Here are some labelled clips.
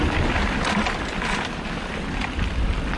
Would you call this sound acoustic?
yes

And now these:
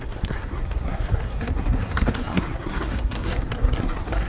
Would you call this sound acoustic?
no